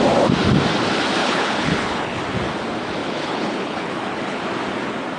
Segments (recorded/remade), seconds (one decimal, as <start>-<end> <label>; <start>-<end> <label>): 0.0-1.2 recorded; 1.2-2.2 remade; 2.2-3.0 recorded; 3.0-4.4 remade; 4.4-5.2 recorded